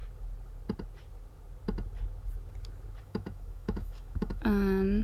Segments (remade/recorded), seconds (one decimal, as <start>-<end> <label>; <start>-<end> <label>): 0.0-3.0 recorded; 3.0-5.0 remade